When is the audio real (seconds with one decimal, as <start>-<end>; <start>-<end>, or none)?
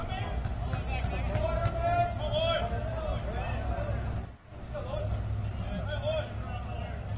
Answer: 0.0-7.2